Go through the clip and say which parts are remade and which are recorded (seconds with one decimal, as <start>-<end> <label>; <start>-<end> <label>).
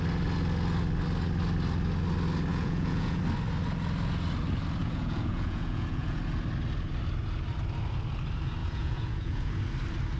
0.0-2.5 recorded; 2.5-3.2 remade; 3.2-4.8 recorded; 4.8-6.2 remade; 6.2-8.6 recorded; 8.6-9.5 remade; 9.5-10.2 recorded